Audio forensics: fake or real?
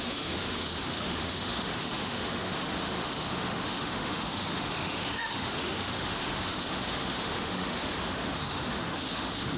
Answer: fake